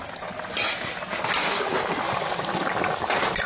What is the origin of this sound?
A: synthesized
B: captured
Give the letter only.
B